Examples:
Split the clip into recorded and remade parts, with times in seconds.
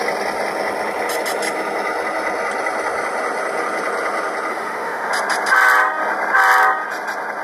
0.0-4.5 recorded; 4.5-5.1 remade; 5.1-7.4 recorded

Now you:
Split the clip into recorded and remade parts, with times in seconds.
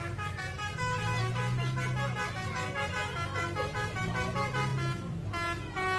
0.0-6.0 recorded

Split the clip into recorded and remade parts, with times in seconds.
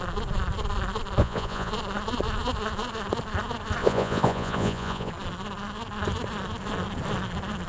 0.0-1.2 recorded; 1.2-1.7 remade; 1.7-3.8 recorded; 3.8-5.1 remade; 5.1-7.7 recorded